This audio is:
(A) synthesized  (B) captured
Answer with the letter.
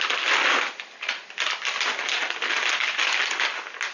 B